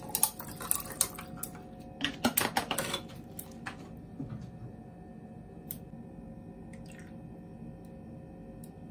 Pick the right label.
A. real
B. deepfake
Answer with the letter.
A